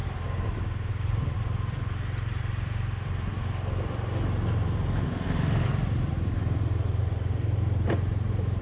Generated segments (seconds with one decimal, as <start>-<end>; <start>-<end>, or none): 0.9-3.3; 7.0-8.6